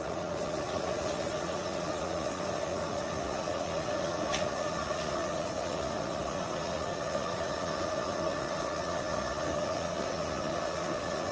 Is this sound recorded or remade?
remade